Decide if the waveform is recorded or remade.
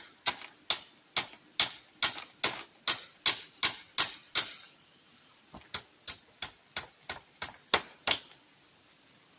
recorded